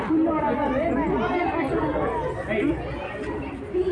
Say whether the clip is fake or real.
real